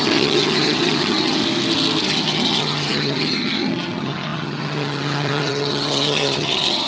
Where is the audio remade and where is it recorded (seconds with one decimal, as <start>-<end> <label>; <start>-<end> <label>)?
0.0-1.4 remade; 1.4-2.1 recorded; 2.1-6.9 remade